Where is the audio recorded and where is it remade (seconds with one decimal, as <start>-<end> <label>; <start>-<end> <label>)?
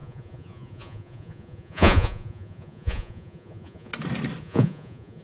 0.0-3.9 remade; 3.9-4.4 recorded; 4.4-5.2 remade